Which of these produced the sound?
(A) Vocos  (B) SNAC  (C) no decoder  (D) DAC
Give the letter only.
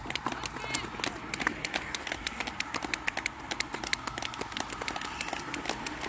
C